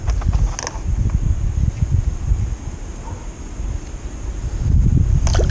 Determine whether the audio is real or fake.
real